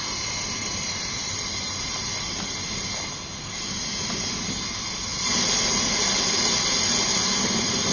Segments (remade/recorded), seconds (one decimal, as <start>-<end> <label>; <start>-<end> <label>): 0.0-7.9 recorded